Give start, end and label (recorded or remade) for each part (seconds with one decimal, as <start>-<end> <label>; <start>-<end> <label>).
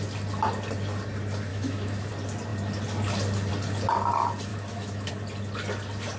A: 0.0-1.5 recorded; 1.5-2.1 remade; 2.1-4.5 recorded; 4.5-5.1 remade; 5.1-6.2 recorded